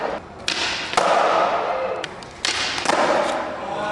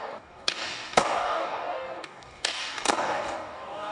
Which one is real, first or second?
first